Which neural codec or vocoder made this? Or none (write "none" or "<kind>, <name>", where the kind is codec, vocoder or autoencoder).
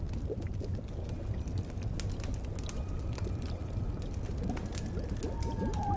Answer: none